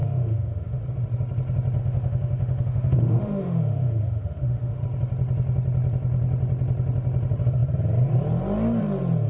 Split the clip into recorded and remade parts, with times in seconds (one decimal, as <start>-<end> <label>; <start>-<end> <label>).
0.0-0.8 remade; 0.8-1.8 recorded; 1.8-4.8 remade; 4.8-9.3 recorded